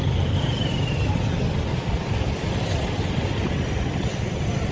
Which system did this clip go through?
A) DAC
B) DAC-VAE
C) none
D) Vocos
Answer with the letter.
C